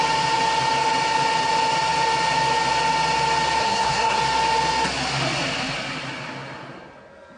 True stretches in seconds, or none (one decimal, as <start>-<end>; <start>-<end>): 0.0-3.6; 4.2-7.4

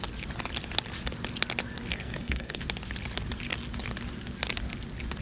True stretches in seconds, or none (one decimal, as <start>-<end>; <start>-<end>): 0.0-1.9; 2.6-5.2

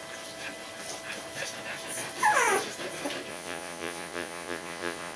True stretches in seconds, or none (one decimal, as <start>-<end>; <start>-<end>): 0.0-3.3